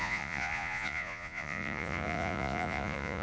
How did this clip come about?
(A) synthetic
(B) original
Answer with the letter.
A